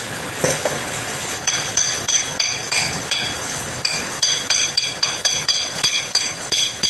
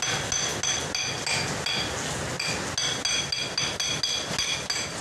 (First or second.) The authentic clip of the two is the second